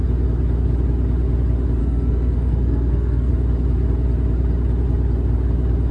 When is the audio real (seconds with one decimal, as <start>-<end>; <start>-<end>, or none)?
0.0-1.8; 3.3-5.9

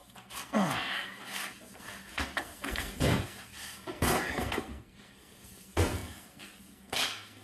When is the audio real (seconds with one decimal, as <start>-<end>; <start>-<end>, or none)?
none

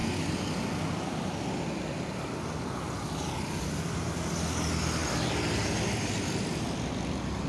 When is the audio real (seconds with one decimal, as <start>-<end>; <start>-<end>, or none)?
0.0-7.5

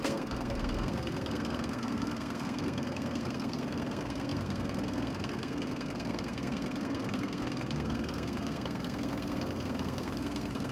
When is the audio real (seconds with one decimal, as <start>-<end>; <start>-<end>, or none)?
none

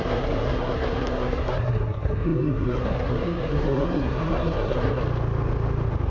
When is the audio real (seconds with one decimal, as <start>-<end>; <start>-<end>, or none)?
5.0-6.1

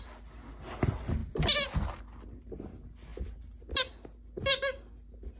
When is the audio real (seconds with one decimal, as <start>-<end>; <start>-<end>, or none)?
0.0-5.4

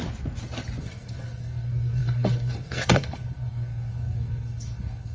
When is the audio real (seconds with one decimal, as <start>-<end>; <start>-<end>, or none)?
0.0-0.8

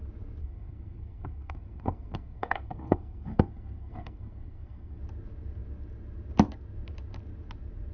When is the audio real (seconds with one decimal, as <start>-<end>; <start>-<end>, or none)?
0.0-0.4; 5.0-7.9